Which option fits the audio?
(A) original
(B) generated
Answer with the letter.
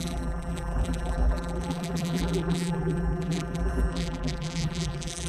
B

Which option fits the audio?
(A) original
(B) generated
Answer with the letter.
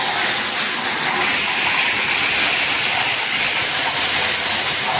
A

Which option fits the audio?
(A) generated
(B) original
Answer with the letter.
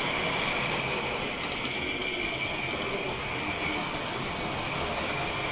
B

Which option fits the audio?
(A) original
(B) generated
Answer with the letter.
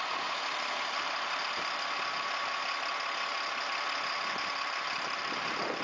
A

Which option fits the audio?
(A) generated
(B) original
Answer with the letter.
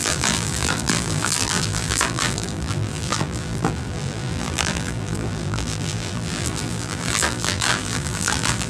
A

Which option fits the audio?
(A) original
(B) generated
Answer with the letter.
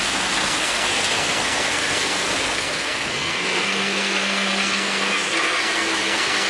B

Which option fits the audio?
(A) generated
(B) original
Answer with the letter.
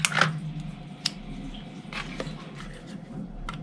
B